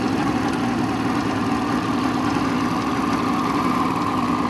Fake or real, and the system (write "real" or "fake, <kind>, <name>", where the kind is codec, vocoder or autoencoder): real